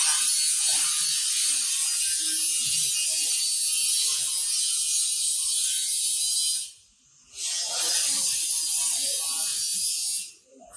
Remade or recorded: recorded